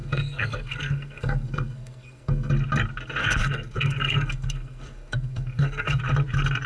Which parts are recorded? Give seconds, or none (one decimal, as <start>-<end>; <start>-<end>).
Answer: 2.5-3.2; 6.0-6.7